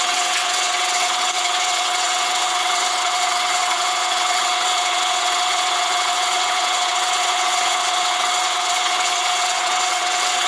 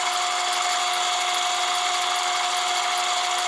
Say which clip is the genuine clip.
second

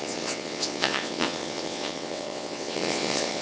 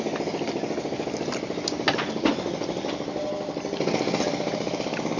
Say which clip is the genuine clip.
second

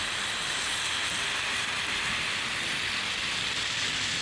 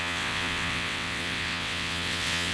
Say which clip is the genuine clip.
first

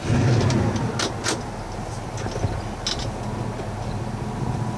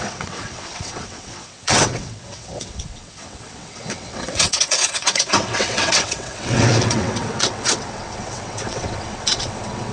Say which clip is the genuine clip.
first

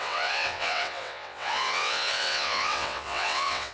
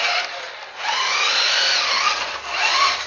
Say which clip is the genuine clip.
second